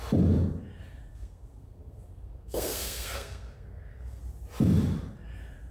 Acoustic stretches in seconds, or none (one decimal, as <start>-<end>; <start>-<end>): 0.0-1.1; 4.2-5.7